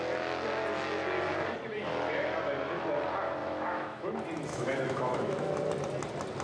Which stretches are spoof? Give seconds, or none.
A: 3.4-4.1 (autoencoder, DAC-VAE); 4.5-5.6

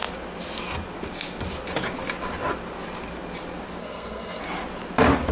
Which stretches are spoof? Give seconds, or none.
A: 3.8-4.4 (codec, SNAC)

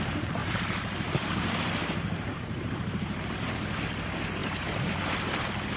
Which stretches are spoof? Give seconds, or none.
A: 0.4-3.8 (vocoder, BigVGAN v2); 4.4-5.2